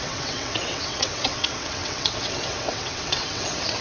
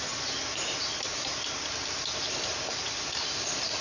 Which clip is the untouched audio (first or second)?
second